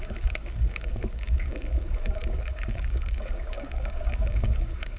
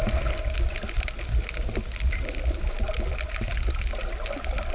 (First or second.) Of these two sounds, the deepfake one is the first